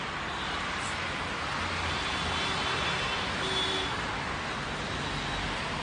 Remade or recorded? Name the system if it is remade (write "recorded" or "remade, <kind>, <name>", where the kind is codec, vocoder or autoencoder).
recorded